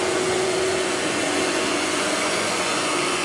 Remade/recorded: remade